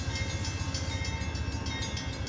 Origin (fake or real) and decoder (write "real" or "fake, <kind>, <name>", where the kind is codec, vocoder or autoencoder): real